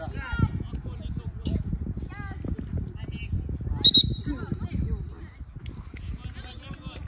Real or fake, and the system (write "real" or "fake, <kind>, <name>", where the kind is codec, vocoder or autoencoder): real